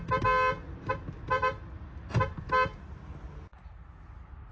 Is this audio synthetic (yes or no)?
no